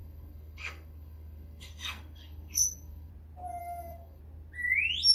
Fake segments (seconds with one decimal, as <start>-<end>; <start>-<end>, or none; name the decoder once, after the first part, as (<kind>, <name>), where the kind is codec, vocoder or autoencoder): 0.0-3.1 (codec, SNAC); 3.6-4.2